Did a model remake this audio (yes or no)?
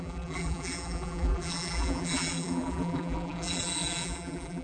yes